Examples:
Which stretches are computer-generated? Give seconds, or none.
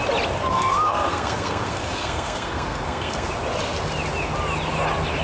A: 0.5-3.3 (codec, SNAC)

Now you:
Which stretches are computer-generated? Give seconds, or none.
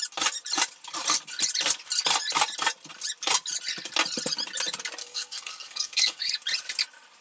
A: 5.0-6.3 (codec, SNAC)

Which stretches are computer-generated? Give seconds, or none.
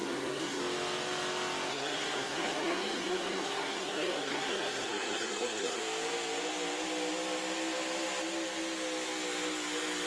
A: 0.0-0.6 (codec, SNAC); 1.7-5.8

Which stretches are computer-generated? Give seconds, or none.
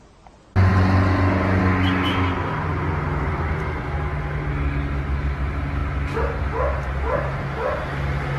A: none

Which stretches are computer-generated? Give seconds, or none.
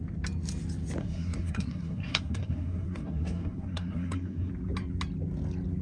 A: 1.0-4.5 (codec, SNAC)